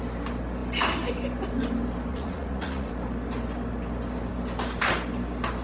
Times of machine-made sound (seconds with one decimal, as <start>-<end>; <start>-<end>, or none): 2.1-2.9